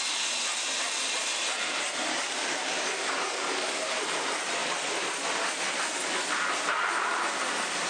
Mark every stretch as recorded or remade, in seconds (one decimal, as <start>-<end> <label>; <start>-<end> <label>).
0.0-2.1 recorded; 2.1-4.0 remade; 4.0-7.9 recorded